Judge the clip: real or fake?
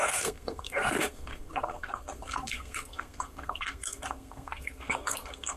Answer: fake